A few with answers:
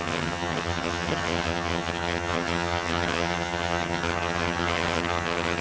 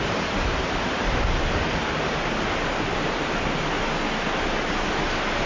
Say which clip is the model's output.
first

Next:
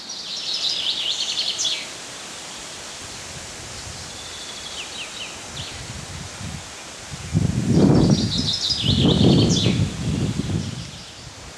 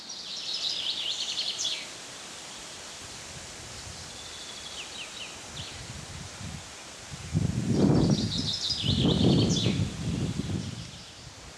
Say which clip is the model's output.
second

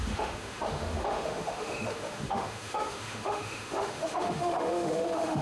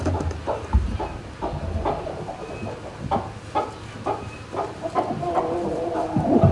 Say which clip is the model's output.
first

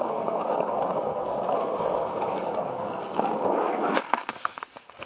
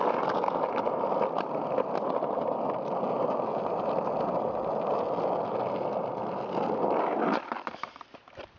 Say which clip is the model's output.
first